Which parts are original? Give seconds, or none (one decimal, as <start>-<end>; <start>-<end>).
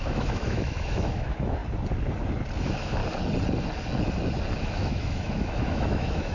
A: 1.6-2.6; 3.0-4.6